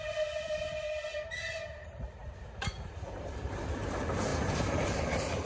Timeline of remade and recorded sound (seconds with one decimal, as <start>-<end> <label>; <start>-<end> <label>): 0.0-5.5 remade